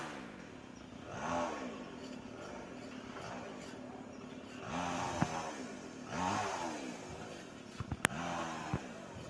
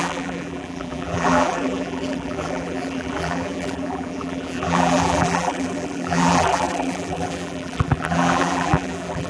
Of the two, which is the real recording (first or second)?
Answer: first